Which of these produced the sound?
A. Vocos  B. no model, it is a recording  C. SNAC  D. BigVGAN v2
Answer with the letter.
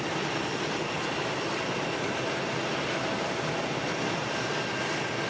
B